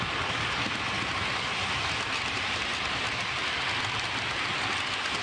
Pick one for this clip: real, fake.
real